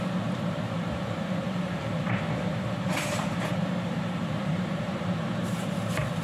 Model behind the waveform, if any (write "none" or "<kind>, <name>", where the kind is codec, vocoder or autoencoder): vocoder, BigVGAN v2